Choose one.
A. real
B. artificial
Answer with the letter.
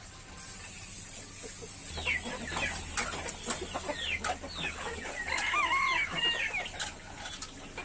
A